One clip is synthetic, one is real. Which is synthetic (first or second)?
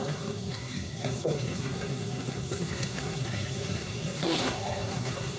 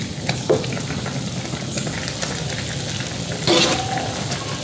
first